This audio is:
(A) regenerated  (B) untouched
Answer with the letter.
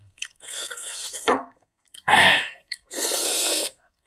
A